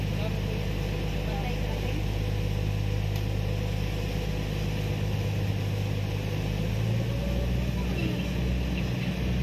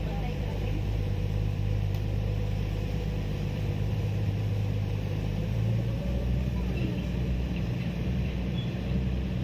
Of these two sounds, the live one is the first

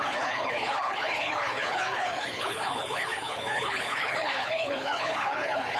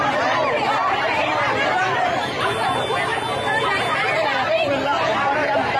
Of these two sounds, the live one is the second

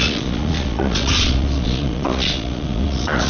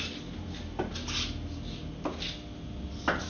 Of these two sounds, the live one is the second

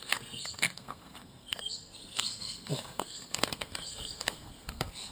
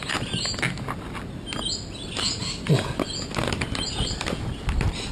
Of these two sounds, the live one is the second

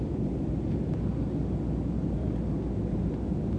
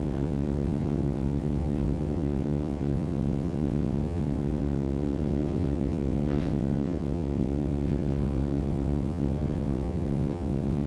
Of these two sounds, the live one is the first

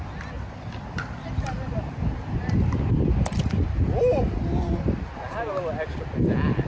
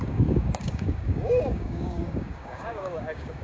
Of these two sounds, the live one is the first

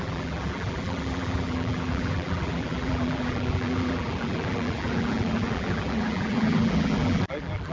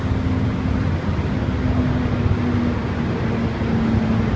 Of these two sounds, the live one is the second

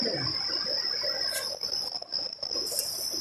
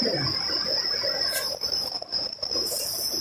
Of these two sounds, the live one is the first